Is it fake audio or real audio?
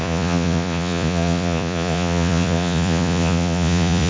fake